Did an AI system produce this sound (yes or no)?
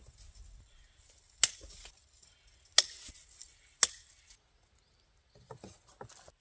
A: no